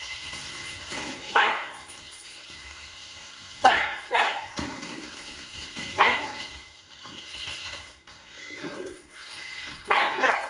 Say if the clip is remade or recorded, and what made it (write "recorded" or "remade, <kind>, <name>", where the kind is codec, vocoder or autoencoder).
remade, codec, SNAC